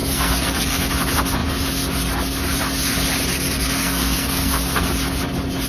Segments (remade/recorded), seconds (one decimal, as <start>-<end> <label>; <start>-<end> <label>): 0.0-0.9 remade; 0.9-3.3 recorded; 3.3-4.9 remade; 4.9-5.7 recorded